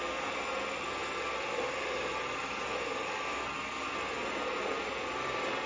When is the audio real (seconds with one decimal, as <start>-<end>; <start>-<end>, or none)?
0.0-5.7